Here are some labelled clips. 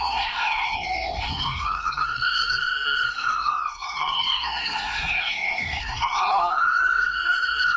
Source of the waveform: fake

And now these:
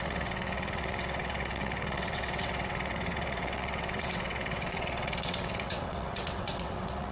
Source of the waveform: fake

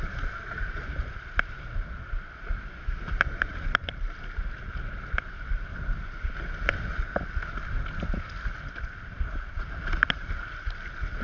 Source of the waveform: real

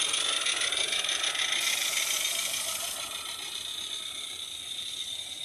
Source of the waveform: real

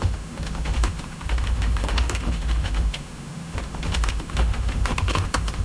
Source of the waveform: fake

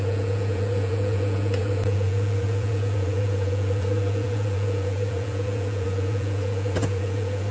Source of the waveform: fake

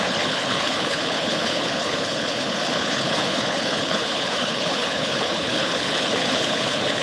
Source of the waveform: fake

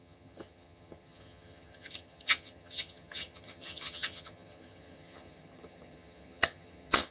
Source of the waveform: fake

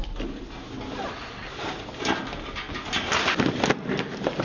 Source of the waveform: real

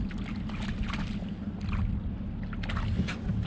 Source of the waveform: real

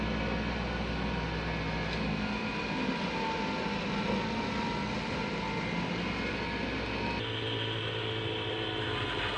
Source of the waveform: real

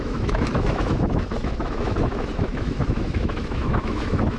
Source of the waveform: fake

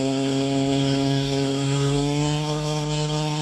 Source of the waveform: fake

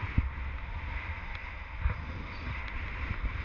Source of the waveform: real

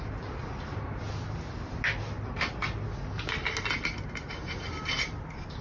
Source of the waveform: real